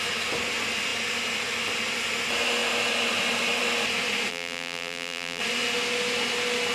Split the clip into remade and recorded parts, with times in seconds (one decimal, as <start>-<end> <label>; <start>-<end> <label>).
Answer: 0.0-4.3 recorded; 4.3-5.4 remade; 5.4-6.7 recorded